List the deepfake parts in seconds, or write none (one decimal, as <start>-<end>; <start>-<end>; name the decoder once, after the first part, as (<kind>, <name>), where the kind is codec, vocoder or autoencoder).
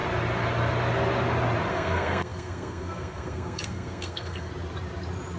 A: 1.7-4.5 (codec, SNAC)